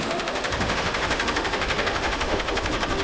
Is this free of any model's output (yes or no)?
no